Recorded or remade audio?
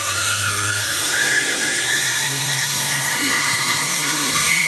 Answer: remade